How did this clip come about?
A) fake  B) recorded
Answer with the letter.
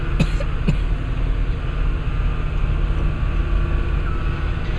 B